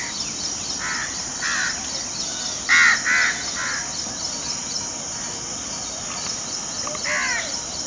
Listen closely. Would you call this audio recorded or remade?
recorded